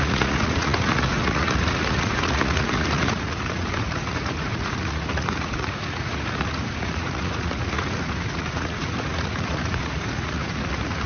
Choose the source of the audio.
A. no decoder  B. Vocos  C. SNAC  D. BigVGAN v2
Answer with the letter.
B